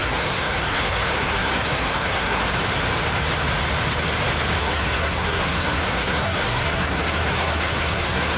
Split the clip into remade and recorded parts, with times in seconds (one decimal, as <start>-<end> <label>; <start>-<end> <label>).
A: 0.0-2.4 remade; 2.4-4.6 recorded; 4.6-8.4 remade